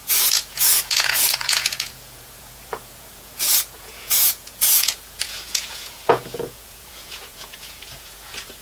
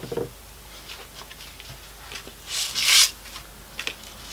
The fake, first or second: first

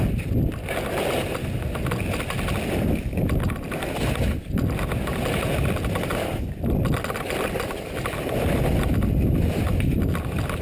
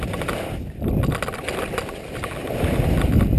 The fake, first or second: first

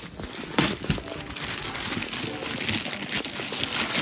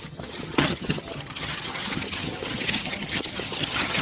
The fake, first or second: second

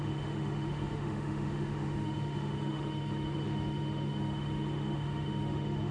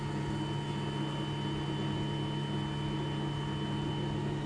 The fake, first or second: first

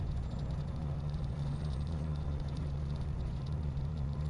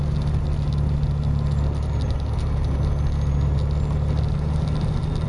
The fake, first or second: first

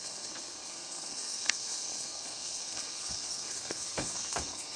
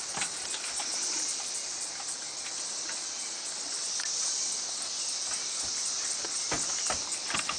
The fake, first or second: first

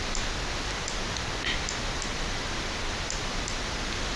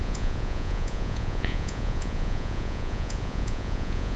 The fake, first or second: second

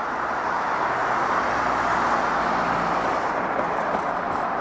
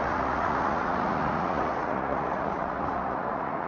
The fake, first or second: second